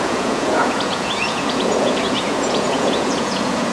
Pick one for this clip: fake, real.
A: fake